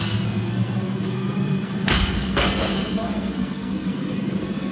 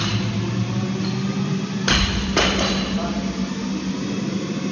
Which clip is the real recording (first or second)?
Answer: second